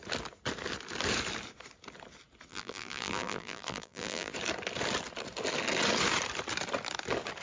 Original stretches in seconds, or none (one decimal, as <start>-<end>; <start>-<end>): 0.0-2.5; 4.3-7.4